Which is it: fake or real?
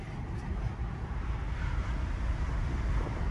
real